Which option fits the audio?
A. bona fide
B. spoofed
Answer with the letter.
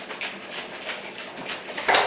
A